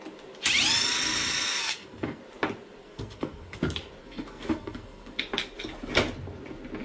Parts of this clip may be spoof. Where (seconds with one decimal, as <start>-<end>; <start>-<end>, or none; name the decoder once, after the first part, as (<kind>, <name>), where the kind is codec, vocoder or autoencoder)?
1.6-2.2 (codec, SNAC); 2.8-3.6; 4.0-5.2

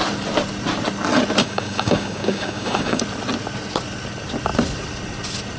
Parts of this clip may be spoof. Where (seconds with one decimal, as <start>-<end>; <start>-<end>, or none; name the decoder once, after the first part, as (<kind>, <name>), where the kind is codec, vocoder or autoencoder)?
1.4-3.0 (codec, DAC)

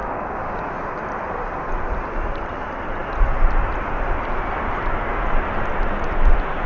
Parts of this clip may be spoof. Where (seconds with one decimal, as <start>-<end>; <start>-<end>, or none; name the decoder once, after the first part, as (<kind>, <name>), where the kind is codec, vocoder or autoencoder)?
0.0-0.6 (codec, DAC)

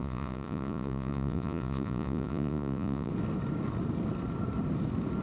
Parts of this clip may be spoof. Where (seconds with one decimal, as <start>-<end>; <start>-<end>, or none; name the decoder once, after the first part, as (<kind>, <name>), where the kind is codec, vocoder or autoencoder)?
0.0-3.1 (vocoder, Vocos)

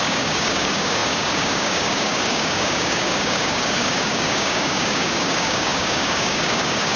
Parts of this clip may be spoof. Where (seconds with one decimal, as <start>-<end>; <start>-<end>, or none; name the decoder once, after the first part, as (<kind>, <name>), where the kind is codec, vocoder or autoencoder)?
0.0-7.0 (codec, DAC)

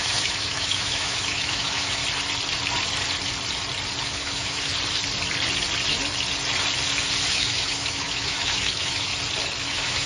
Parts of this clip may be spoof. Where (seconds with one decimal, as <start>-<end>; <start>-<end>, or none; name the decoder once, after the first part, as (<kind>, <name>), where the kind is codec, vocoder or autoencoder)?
0.0-2.0 (autoencoder, DAC-VAE); 4.0-4.7; 7.3-9.1; 9.6-10.1

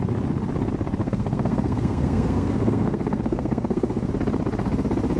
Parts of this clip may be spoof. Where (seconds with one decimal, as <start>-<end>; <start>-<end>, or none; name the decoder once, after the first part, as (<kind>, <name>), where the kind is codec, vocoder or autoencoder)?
1.0-4.1 (codec, SNAC)